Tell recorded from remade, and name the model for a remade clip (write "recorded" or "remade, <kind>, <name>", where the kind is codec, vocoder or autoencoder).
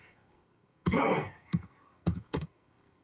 remade, codec, SNAC